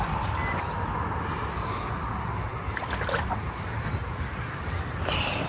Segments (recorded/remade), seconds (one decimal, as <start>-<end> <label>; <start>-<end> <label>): 0.0-5.5 recorded